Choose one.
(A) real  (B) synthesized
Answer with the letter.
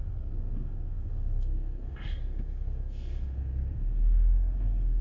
B